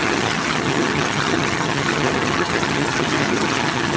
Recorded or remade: remade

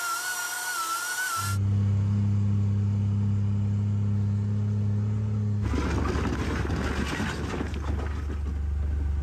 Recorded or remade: recorded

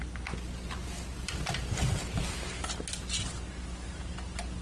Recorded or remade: recorded